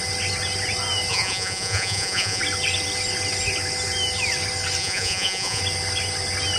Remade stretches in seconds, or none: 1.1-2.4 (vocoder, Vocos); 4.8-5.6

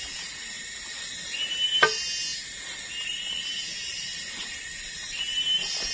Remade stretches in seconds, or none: none

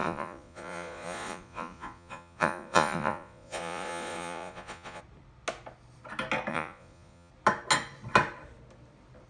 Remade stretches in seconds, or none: 0.0-5.0 (vocoder, Vocos); 6.5-7.3

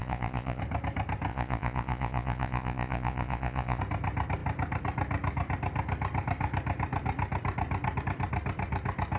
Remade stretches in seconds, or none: 0.0-0.6 (vocoder, Vocos); 1.3-3.8